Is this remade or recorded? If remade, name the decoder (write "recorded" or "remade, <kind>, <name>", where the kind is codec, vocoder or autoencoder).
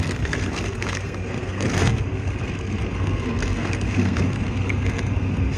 remade, codec, SNAC